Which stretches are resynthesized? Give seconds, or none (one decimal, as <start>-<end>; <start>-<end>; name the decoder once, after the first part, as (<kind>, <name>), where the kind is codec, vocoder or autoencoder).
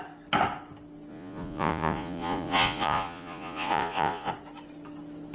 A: 1.1-4.3 (vocoder, Vocos)